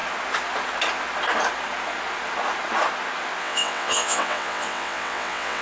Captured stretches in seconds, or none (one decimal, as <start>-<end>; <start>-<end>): 0.0-3.4